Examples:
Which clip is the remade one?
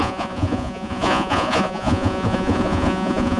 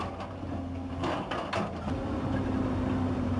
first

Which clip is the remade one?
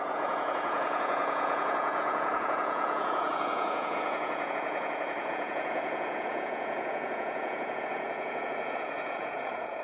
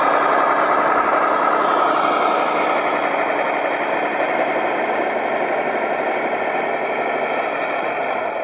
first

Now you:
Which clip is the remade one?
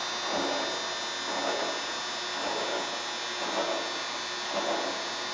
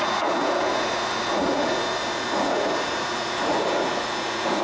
second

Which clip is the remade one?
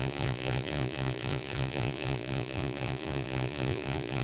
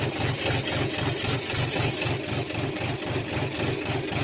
first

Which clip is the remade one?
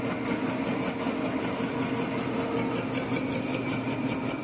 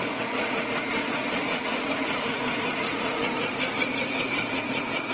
second